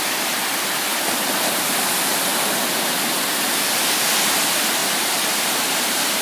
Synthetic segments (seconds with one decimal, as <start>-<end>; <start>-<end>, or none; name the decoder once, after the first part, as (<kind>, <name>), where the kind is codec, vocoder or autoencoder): 2.3-2.9 (vocoder, BigVGAN v2); 4.8-6.2